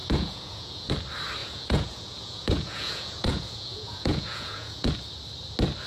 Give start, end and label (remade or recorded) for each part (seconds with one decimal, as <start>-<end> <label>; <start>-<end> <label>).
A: 0.0-0.9 remade; 0.9-1.4 recorded; 1.4-4.9 remade; 4.9-5.9 recorded